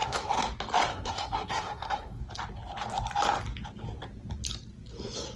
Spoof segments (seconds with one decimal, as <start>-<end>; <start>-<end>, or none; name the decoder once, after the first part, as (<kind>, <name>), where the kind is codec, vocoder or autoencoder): 0.0-0.5 (codec, SNAC); 0.9-2.2